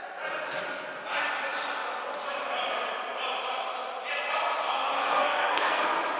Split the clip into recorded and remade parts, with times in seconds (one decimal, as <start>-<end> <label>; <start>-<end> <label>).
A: 0.0-5.0 recorded; 5.0-5.8 remade; 5.8-6.2 recorded